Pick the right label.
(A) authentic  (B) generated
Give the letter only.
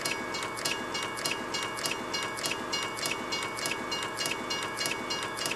A